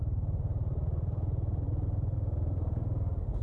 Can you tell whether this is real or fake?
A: fake